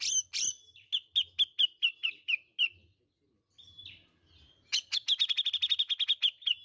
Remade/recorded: recorded